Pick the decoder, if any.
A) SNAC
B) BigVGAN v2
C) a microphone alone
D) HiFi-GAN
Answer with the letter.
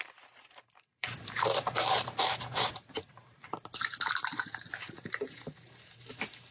B